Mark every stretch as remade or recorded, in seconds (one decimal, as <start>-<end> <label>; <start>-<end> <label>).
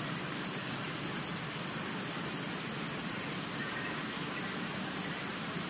0.0-5.7 recorded